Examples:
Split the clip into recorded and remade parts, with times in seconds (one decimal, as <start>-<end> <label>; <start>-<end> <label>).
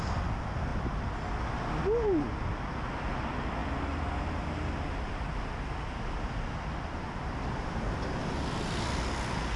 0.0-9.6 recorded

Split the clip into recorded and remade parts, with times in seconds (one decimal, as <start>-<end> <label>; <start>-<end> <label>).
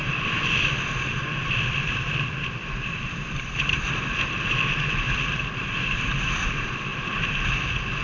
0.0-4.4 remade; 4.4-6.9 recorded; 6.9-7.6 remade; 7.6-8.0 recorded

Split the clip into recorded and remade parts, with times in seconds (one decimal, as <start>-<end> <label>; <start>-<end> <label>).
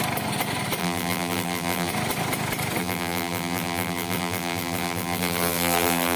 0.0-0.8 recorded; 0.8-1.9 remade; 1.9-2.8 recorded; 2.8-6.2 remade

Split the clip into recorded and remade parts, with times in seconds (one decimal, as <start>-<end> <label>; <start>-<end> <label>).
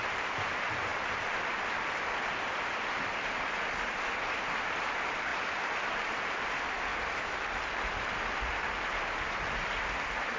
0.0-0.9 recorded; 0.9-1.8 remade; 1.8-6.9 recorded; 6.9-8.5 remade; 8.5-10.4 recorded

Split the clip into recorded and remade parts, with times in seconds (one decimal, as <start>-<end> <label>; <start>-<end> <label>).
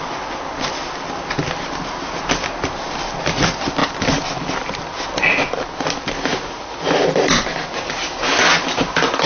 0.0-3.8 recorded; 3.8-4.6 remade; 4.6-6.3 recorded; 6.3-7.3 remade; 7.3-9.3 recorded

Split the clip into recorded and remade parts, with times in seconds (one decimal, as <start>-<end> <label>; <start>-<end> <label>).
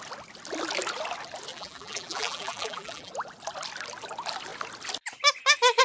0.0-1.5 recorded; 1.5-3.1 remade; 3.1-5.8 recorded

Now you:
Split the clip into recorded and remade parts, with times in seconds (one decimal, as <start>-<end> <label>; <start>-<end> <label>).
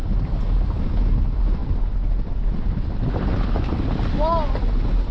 0.0-5.1 recorded